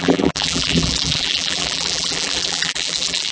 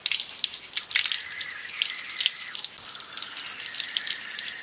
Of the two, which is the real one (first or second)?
second